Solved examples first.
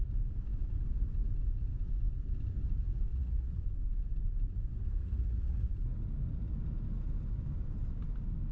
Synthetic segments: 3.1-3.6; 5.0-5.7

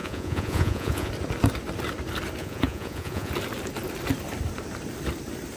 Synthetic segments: 0.0-1.1; 2.4-3.3

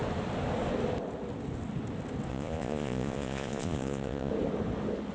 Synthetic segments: 2.3-4.3

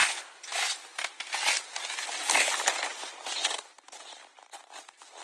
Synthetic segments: none

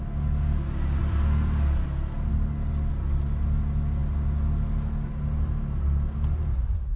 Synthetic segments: none

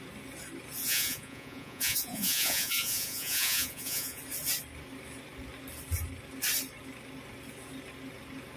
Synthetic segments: 0.8-4.2